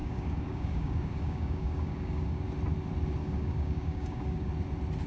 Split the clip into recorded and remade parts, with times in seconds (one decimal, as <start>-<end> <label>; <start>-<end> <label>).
0.0-2.4 remade; 2.4-3.2 recorded; 3.2-4.5 remade; 4.5-5.1 recorded